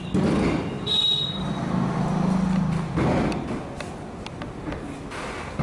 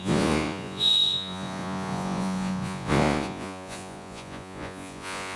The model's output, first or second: second